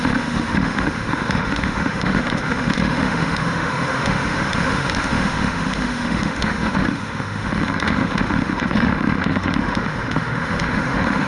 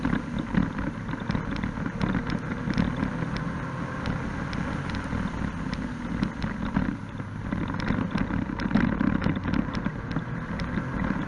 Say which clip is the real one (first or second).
second